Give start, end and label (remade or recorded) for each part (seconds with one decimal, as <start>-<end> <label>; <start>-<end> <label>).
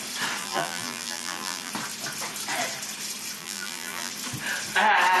0.0-0.4 recorded; 0.4-1.7 remade; 1.7-3.4 recorded; 3.4-4.1 remade; 4.1-5.2 recorded